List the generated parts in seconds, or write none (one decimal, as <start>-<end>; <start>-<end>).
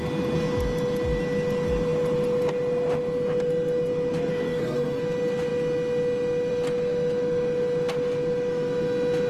4.3-5.0